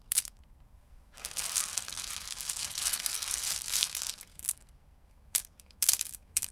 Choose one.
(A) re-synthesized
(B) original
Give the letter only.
A